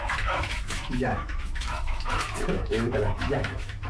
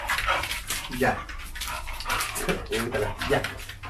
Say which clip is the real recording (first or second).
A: second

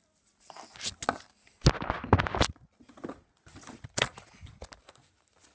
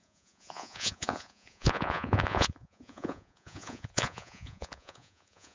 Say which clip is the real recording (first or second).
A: first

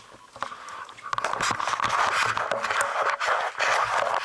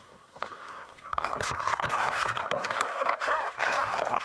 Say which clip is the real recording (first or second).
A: first